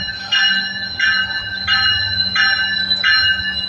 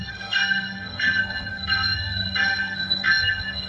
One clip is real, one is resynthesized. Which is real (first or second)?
first